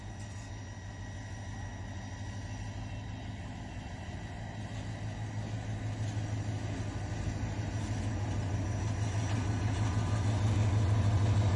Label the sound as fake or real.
real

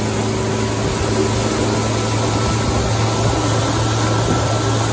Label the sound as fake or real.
real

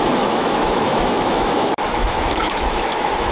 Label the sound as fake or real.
fake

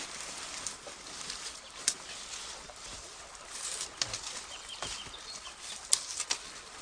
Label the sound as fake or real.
real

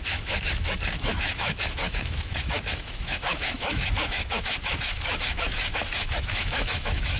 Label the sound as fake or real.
fake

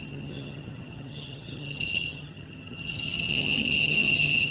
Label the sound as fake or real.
fake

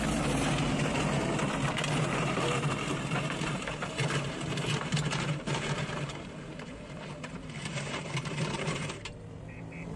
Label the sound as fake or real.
fake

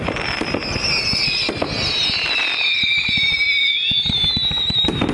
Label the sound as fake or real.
real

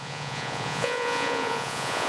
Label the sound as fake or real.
fake